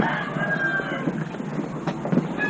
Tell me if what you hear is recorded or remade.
recorded